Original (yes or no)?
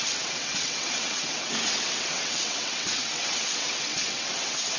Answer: no